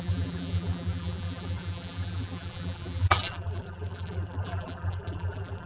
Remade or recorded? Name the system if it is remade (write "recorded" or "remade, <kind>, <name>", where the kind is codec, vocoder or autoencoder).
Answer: remade, vocoder, BigVGAN v2